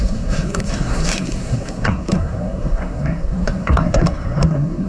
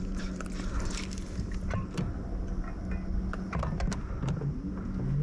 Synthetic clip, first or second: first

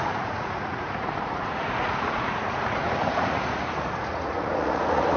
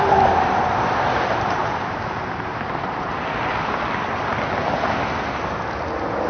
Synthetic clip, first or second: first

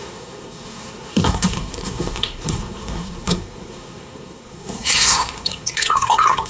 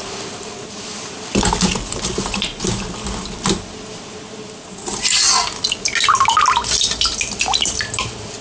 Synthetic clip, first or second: first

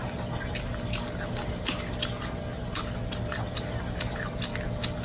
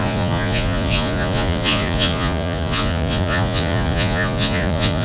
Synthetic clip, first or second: second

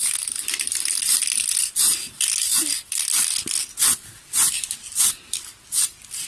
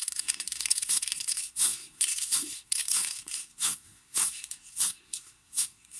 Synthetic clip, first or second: second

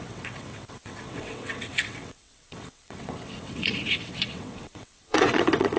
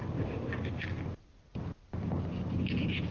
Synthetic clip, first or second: first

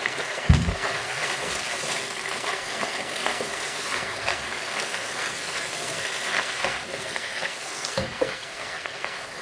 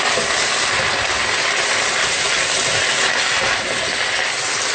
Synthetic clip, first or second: first